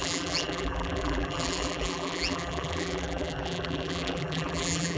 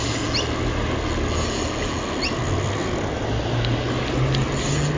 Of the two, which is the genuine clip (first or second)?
second